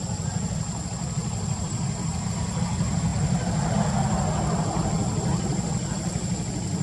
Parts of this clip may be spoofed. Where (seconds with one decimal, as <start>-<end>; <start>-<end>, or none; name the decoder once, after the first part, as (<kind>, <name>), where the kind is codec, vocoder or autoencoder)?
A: 1.2-2.7 (vocoder, BigVGAN v2); 3.1-3.7